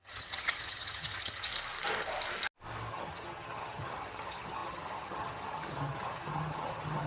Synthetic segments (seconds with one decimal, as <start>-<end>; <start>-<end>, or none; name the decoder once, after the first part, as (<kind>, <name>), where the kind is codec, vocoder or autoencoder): 0.0-1.5 (vocoder, HiFi-GAN); 2.9-7.1

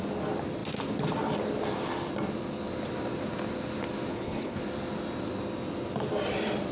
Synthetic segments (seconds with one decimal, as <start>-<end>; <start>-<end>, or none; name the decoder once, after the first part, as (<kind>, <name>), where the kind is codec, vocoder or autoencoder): 4.1-4.6 (codec, HILCodec)

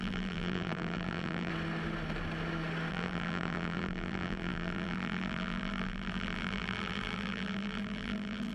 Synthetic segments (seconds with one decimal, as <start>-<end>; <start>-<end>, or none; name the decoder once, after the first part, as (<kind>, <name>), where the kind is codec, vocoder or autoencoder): 0.0-1.5 (vocoder, BigVGAN v2); 2.9-8.5

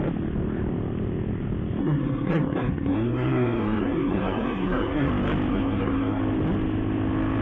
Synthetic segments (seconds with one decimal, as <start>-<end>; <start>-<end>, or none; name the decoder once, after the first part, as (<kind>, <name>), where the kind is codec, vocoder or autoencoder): 1.8-5.1 (codec, SNAC); 5.5-6.2

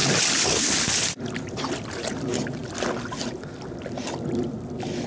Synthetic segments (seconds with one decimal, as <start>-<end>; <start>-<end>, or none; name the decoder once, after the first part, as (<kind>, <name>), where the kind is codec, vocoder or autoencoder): none

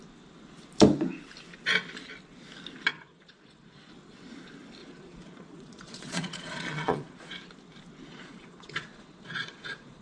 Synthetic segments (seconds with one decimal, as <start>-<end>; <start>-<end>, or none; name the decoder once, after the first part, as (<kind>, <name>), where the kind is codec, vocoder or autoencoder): 2.9-3.9 (vocoder, Vocos); 4.8-7.3; 8.1-10.0